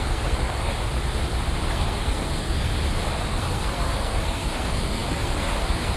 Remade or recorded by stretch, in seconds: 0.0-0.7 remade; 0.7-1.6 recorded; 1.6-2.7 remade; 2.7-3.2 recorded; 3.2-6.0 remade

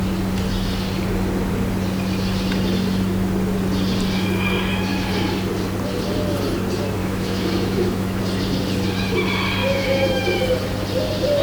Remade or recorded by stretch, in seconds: 0.0-7.0 recorded; 7.0-8.2 remade; 8.2-9.6 recorded; 9.6-10.2 remade; 10.2-11.4 recorded

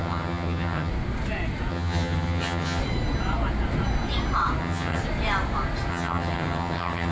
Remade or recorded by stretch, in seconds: 0.0-0.9 remade; 0.9-1.7 recorded; 1.7-2.8 remade; 2.8-4.6 recorded; 4.6-5.0 remade; 5.0-5.9 recorded; 5.9-7.1 remade

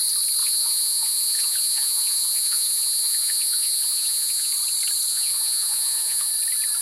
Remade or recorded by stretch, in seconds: 0.0-0.4 recorded; 0.4-4.5 remade; 4.5-5.1 recorded; 5.1-6.3 remade; 6.3-6.8 recorded